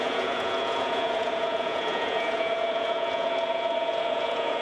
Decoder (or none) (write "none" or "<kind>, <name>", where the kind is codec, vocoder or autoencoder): vocoder, Vocos